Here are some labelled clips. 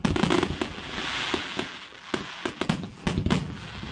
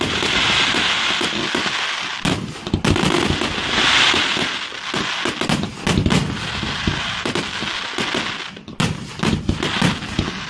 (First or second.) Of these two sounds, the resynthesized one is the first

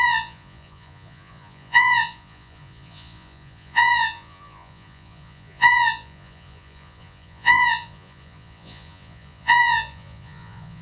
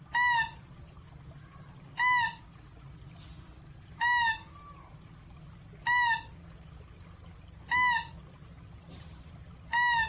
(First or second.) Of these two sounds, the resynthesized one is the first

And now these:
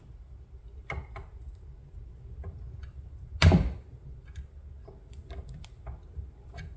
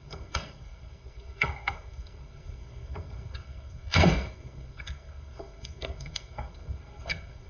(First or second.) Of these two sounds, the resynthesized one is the second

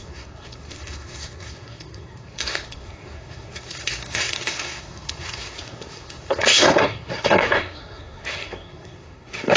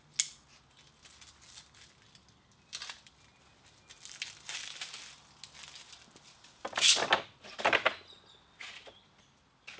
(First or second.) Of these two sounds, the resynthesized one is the first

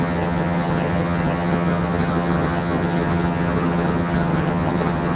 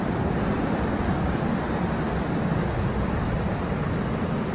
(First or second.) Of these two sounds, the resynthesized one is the first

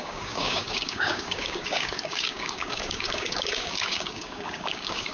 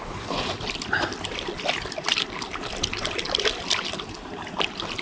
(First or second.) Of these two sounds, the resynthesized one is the first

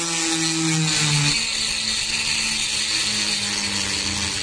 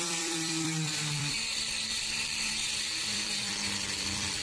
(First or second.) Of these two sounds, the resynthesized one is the second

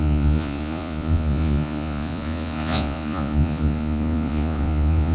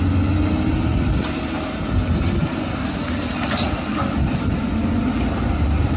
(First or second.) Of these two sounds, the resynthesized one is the first